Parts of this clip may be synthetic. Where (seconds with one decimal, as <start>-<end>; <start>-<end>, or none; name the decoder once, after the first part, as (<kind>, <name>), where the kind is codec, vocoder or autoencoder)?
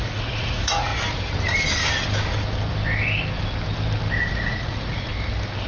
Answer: 0.0-0.9 (vocoder, Vocos); 4.3-5.1